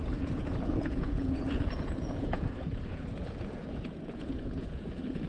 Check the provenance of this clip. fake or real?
fake